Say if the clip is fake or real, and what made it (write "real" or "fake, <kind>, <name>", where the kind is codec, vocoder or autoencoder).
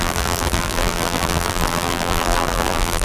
fake, vocoder, BigVGAN v2